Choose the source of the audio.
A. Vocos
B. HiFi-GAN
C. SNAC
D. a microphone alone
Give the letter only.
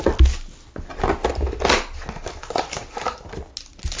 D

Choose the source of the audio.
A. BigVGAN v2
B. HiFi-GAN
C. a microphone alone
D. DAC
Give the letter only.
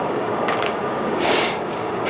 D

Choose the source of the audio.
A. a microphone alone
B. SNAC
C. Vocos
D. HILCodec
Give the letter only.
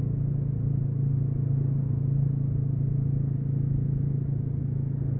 A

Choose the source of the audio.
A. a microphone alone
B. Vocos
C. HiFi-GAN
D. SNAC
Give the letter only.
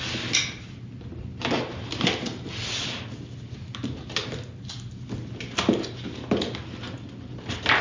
A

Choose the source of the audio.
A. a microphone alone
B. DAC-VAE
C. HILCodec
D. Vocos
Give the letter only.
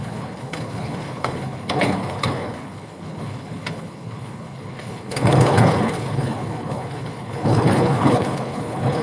C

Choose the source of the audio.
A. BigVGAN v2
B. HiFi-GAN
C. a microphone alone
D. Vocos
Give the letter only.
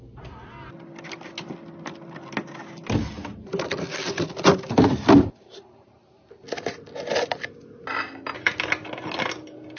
C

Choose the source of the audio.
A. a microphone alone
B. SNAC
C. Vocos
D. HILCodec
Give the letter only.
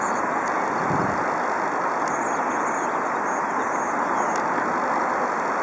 A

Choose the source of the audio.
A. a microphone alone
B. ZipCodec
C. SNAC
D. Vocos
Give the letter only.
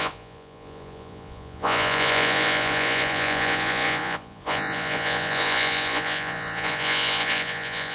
D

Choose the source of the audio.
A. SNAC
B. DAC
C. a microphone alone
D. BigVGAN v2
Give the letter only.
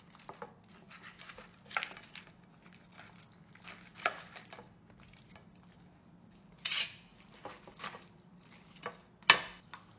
C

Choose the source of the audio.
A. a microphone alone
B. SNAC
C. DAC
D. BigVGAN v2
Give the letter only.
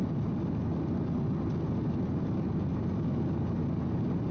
A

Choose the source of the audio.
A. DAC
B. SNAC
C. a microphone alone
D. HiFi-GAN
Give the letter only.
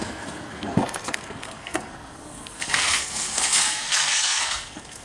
B